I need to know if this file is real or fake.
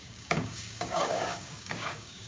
fake